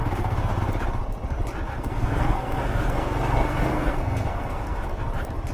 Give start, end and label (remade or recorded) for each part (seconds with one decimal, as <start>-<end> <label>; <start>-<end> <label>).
0.0-0.6 remade; 0.6-1.7 recorded; 1.7-5.0 remade; 5.0-5.5 recorded